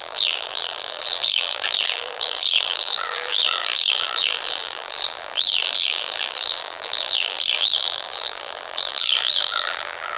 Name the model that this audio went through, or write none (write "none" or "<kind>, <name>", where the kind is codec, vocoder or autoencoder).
vocoder, BigVGAN v2